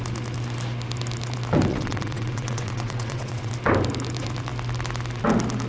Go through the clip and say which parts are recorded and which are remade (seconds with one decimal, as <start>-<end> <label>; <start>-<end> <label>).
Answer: 0.0-1.7 recorded; 1.7-3.5 remade; 3.5-5.7 recorded